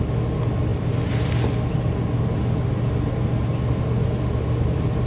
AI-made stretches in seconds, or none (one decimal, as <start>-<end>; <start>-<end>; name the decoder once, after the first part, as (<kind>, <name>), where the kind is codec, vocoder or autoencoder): none